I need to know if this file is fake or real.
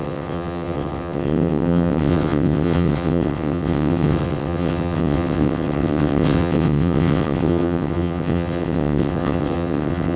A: fake